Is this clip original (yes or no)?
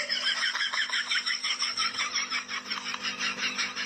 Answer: yes